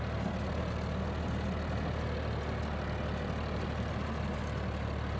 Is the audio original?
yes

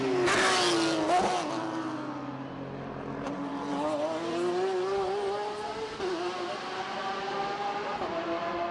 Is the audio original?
yes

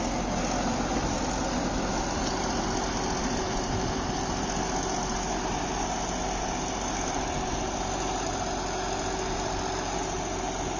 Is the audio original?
yes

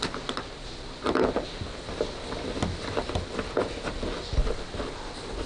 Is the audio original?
yes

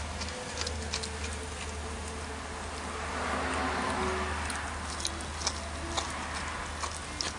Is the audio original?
yes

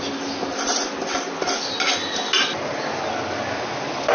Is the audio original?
yes